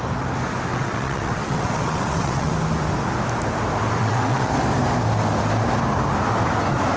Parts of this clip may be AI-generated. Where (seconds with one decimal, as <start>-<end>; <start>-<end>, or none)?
0.7-2.5; 4.0-4.5